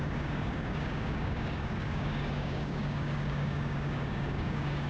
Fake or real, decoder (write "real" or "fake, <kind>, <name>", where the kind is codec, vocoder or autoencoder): fake, codec, DAC